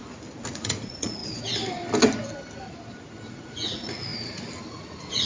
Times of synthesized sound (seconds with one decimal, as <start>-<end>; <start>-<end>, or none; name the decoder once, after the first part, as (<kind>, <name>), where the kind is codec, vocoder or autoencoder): 0.5-1.2 (vocoder, Vocos); 3.3-4.1; 4.7-5.3